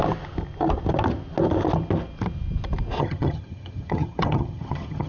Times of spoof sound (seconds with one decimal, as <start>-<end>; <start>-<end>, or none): 3.0-5.1